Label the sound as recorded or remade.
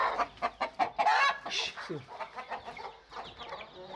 recorded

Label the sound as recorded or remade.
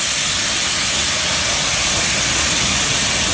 recorded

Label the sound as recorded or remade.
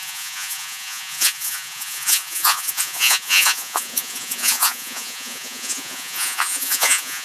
remade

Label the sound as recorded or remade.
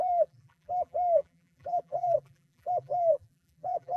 remade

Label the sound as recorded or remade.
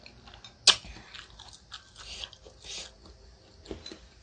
recorded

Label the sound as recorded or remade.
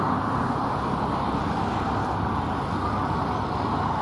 recorded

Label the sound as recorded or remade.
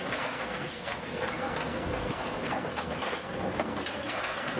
remade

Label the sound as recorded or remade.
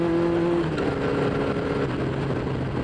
recorded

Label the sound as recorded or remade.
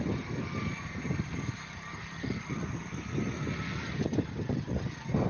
recorded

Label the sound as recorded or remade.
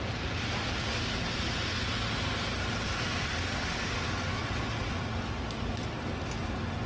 recorded